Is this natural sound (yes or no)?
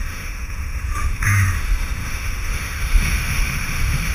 no